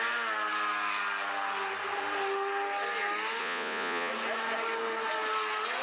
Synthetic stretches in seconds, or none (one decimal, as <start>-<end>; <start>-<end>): 3.4-4.1